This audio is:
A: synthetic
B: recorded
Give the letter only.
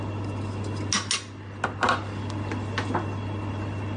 B